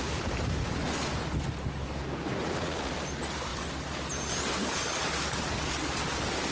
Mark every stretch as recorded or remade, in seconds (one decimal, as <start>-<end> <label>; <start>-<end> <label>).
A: 0.0-2.4 recorded; 2.4-2.9 remade; 2.9-6.5 recorded